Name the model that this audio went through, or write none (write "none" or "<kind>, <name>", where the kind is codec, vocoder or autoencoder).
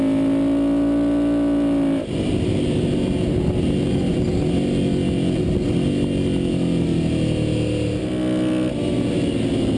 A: none